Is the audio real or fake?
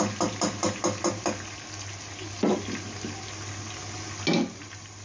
real